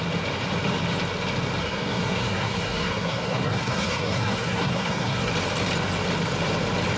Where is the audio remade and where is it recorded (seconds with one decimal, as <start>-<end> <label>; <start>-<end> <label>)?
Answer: 0.0-1.6 recorded; 1.6-5.3 remade; 5.3-7.0 recorded